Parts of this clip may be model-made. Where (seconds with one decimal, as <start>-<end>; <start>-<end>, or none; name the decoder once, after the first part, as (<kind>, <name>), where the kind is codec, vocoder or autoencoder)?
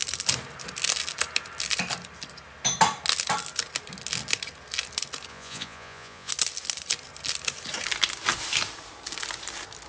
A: 5.3-6.3 (vocoder, Vocos)